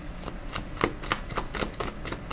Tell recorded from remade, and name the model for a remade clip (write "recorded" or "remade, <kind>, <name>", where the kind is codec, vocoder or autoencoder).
recorded